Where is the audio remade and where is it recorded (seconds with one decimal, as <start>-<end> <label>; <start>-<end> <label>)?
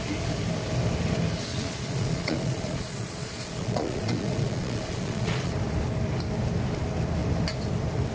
0.0-1.5 recorded; 1.5-5.5 remade; 5.5-8.1 recorded